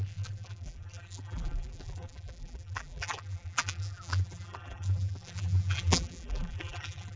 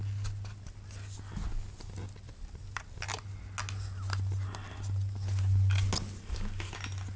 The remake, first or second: first